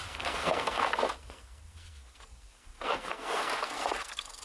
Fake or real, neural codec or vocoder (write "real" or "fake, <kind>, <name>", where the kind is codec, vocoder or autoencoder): fake, codec, SNAC